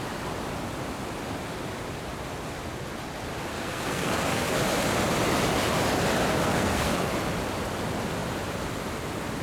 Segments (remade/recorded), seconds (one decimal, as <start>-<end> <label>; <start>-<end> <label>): 0.0-3.5 recorded; 3.5-4.6 remade; 4.6-6.3 recorded; 6.3-7.1 remade; 7.1-9.4 recorded